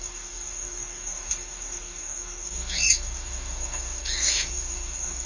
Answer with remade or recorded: remade